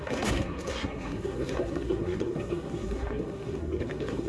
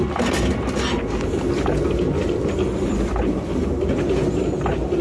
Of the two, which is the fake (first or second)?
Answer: first